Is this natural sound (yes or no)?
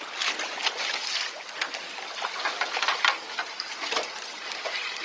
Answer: yes